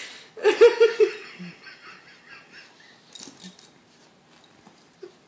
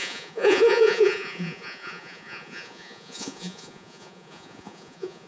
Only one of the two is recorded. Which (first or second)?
first